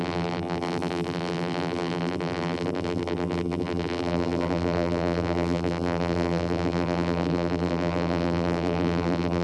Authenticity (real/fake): fake